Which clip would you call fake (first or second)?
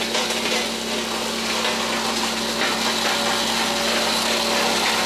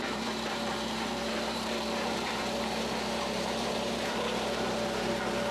second